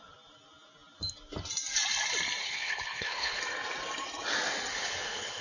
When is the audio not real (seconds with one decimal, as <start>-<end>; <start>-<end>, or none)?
2.4-3.4; 4.7-5.4